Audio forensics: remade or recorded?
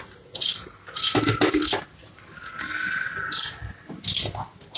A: recorded